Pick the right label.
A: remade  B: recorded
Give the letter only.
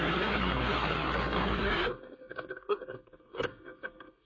A